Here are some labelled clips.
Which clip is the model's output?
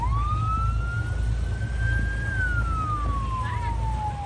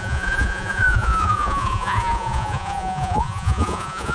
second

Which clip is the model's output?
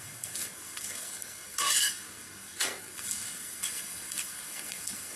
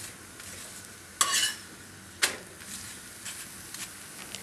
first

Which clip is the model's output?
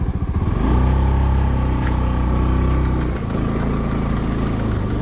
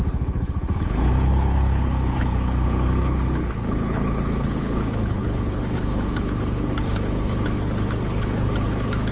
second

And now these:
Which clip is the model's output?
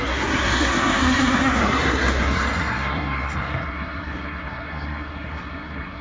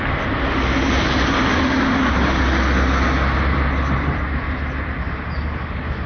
first